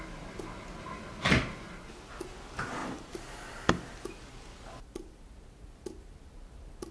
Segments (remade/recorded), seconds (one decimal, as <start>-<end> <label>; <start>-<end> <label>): 0.0-6.9 recorded